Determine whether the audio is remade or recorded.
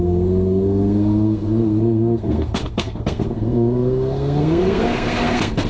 remade